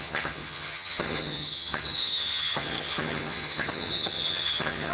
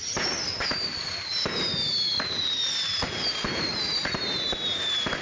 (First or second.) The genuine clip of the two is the second